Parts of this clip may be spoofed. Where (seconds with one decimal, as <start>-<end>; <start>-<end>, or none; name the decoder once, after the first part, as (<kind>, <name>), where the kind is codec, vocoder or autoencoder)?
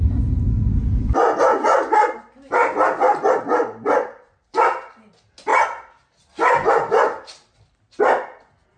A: 2.6-4.5 (vocoder, BigVGAN v2)